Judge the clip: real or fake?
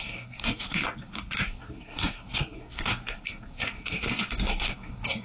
fake